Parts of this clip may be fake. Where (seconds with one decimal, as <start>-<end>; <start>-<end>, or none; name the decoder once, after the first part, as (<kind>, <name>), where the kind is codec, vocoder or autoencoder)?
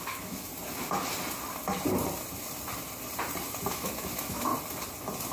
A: 0.0-0.5 (autoencoder, DAC-VAE); 3.7-4.5